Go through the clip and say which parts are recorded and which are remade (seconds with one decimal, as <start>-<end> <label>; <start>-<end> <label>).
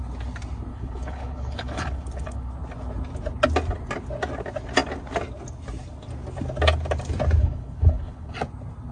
0.0-0.7 recorded; 0.7-2.5 remade; 2.5-7.4 recorded; 7.4-8.3 remade; 8.3-8.9 recorded